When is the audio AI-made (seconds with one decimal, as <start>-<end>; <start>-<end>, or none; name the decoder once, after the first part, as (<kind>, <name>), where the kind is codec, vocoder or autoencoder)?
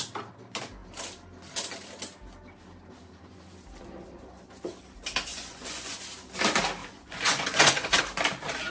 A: 5.3-6.0 (vocoder, Vocos); 6.8-8.0